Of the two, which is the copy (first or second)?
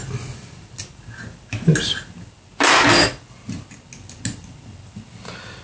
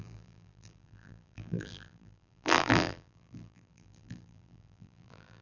second